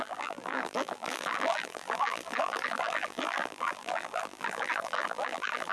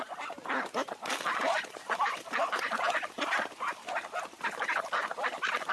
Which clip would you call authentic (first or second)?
second